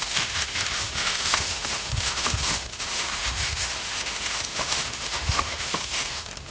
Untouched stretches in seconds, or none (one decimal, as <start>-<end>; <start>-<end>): none